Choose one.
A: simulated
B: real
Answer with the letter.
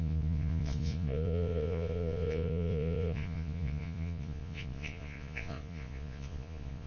A